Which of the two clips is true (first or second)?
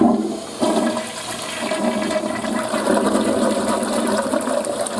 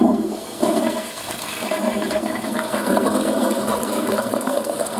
first